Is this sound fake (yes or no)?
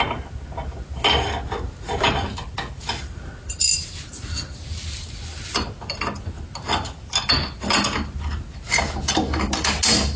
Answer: no